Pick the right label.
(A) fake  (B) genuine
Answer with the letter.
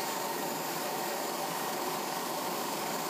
A